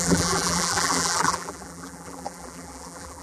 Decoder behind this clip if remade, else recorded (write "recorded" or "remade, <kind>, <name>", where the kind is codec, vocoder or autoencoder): remade, vocoder, BigVGAN v2